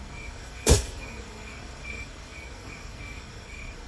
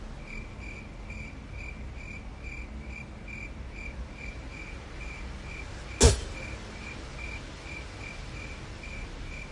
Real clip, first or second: second